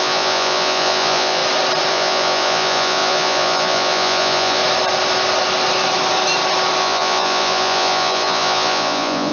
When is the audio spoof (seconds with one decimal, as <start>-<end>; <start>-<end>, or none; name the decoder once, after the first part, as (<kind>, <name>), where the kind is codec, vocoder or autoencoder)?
0.0-1.4 (vocoder, Vocos); 1.9-4.6; 6.8-9.3